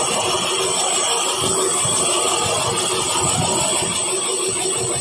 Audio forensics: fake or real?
real